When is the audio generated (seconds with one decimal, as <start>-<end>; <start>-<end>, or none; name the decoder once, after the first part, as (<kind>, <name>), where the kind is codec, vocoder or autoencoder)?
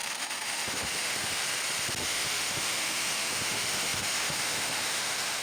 0.0-1.4 (autoencoder, DAC-VAE); 2.0-5.4